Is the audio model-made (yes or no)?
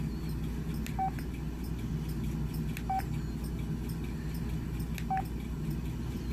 no